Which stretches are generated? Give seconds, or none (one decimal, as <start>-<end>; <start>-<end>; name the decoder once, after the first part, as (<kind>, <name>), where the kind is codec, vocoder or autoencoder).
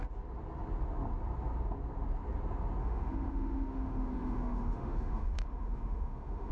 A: 2.8-6.5 (autoencoder, DAC-VAE)